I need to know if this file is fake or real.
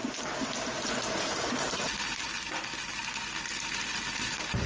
fake